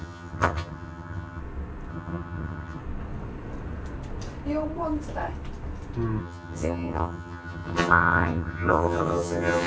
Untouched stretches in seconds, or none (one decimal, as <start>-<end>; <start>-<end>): 1.4-1.9; 2.8-6.2

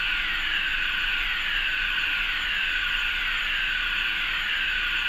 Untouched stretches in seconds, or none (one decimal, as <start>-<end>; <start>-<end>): 0.0-5.1

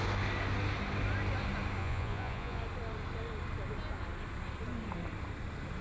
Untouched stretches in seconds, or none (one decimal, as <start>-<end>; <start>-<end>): 0.0-1.8; 2.6-5.8

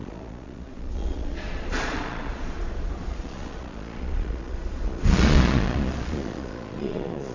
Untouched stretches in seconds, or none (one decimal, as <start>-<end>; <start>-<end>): none

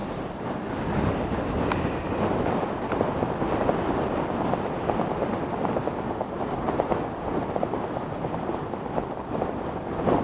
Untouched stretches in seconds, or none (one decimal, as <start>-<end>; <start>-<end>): 0.0-10.2

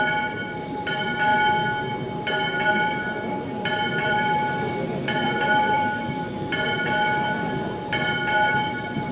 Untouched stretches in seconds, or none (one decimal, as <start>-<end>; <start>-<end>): 1.3-2.7